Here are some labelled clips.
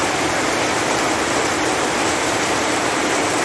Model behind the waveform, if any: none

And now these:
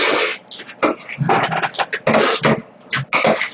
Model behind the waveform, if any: none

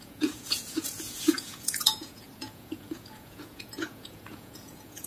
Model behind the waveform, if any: vocoder, Vocos